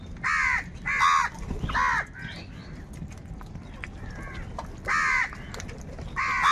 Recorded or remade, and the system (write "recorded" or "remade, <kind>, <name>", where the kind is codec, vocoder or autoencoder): recorded